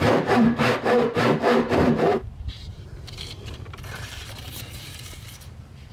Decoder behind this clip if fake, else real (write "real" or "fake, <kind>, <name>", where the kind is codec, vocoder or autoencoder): fake, vocoder, BigVGAN v2